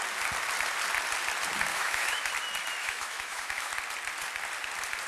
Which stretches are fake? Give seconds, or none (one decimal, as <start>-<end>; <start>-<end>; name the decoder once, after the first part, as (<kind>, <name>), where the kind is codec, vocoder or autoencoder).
1.7-2.3 (autoencoder, DAC-VAE); 2.8-3.7